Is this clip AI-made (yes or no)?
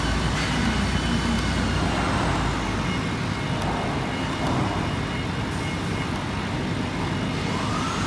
no